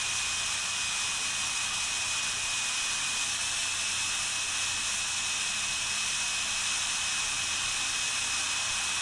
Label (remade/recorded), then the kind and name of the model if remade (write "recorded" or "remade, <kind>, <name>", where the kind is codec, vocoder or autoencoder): recorded